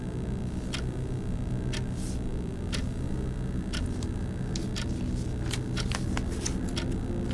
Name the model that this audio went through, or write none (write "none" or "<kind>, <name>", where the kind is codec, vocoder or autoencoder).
none